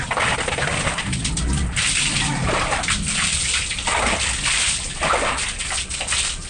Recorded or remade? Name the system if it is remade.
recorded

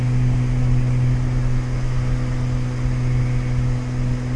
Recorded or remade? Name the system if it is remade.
recorded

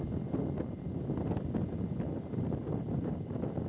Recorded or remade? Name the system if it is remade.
recorded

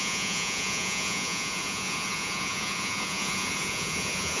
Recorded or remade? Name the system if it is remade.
remade, vocoder, Vocos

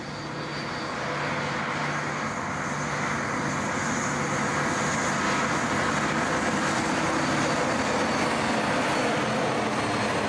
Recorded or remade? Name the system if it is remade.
recorded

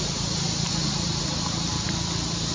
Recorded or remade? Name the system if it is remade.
recorded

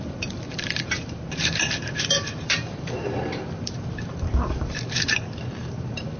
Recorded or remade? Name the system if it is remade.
remade, vocoder, BigVGAN v2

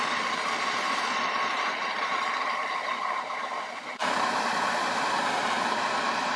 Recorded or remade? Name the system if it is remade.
remade, vocoder, BigVGAN v2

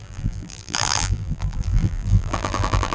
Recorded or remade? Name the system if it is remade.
remade, vocoder, BigVGAN v2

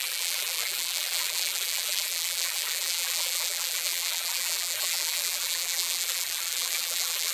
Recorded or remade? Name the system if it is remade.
remade, vocoder, BigVGAN v2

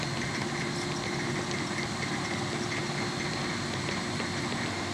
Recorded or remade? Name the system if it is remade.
recorded